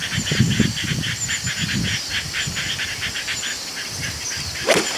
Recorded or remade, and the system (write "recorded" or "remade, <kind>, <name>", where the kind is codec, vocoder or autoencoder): recorded